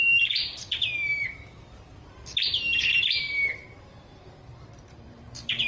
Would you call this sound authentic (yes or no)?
no